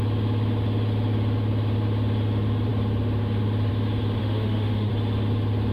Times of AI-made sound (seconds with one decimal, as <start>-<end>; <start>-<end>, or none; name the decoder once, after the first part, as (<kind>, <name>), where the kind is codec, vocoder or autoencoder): 4.2-4.9 (autoencoder, DAC-VAE)